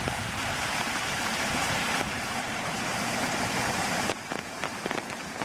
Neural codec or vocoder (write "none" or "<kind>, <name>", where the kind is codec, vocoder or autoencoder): vocoder, BigVGAN v2